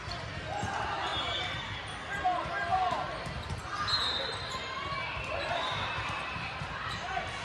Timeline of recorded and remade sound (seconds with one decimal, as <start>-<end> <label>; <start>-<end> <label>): 0.0-7.4 recorded